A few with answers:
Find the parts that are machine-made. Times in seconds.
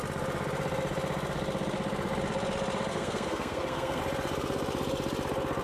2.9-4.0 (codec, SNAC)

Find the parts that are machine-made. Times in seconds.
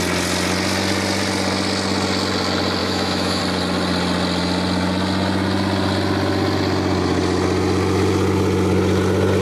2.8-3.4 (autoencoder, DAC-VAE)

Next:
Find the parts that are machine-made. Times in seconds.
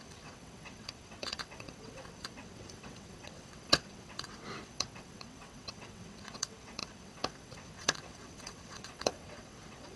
0.0-10.0 (vocoder, WaveNeXt)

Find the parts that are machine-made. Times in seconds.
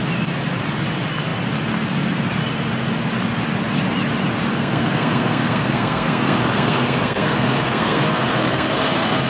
4.5-9.3 (codec, SNAC)